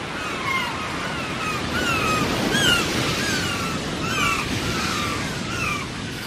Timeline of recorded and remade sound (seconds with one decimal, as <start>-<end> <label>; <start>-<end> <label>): 0.0-4.3 recorded; 4.3-6.3 remade